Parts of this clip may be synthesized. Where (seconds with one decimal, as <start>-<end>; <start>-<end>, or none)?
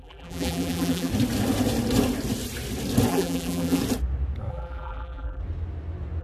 0.0-1.1; 3.1-3.8; 4.5-5.4